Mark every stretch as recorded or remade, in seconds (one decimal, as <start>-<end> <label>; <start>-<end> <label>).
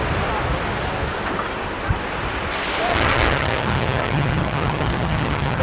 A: 0.0-2.9 recorded; 2.9-5.6 remade